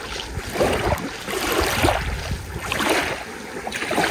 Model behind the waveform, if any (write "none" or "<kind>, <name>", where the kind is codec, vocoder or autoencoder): none